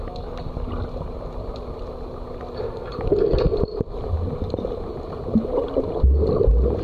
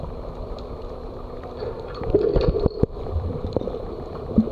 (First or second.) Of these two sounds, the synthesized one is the second